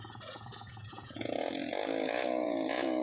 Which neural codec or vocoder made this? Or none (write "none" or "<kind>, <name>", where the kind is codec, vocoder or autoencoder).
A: vocoder, Vocos